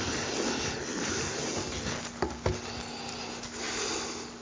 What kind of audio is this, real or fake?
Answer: real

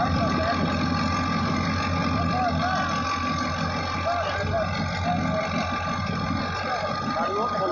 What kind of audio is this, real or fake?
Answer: real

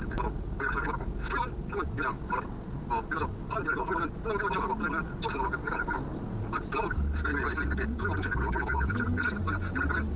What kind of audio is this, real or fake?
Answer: real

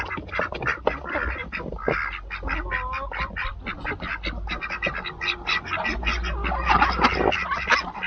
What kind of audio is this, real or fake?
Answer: real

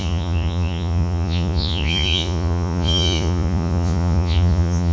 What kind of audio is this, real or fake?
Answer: fake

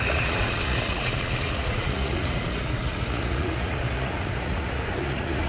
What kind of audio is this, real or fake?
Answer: fake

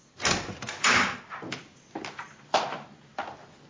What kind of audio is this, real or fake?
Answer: real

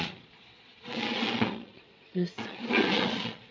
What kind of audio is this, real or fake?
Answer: fake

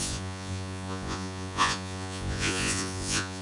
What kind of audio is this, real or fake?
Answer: fake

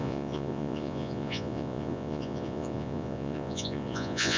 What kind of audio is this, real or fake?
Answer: fake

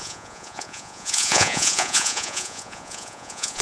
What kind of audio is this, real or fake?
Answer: fake